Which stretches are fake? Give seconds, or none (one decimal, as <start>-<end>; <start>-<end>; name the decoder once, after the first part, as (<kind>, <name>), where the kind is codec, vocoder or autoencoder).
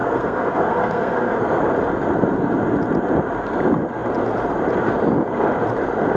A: 0.0-1.6 (codec, SNAC)